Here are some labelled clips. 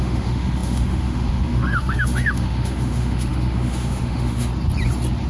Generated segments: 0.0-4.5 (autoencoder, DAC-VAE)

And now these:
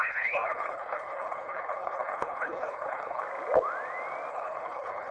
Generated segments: 0.0-3.2 (codec, HILCodec); 4.3-5.1

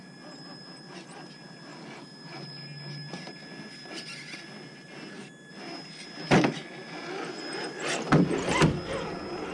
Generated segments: none

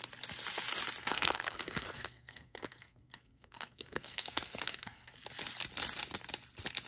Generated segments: 1.0-5.1 (codec, SNAC)

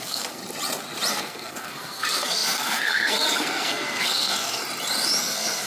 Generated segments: 0.0-0.4 (codec, SNAC); 1.1-4.6; 5.2-5.7

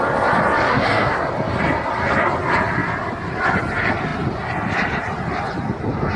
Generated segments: 0.7-1.3 (codec, SNAC)